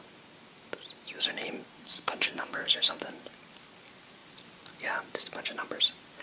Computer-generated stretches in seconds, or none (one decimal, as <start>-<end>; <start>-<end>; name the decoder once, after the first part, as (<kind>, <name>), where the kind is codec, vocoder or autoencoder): 1.7-3.0 (codec, SNAC)